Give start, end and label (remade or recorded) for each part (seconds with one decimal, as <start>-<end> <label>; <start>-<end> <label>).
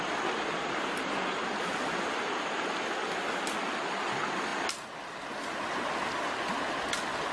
0.0-7.3 recorded